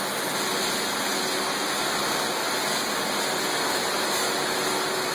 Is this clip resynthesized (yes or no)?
no